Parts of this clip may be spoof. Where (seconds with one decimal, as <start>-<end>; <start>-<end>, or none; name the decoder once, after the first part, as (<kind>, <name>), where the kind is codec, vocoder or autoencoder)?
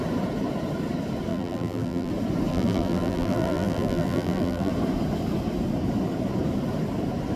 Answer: 1.3-2.1 (vocoder, BigVGAN v2); 2.5-4.7